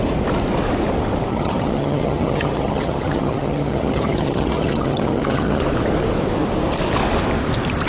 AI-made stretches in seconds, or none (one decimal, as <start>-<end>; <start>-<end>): 1.3-5.6